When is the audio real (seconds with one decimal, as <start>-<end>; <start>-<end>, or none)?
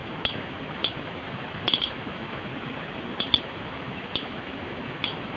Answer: 2.5-3.4